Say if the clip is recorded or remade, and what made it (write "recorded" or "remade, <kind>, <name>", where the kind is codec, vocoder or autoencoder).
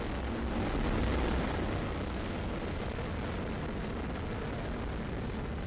recorded